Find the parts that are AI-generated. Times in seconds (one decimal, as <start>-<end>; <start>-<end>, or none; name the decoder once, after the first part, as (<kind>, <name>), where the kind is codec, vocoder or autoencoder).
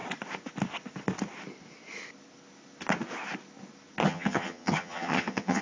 4.0-5.6 (vocoder, HiFi-GAN)